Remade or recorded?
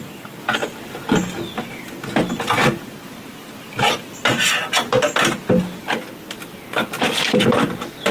recorded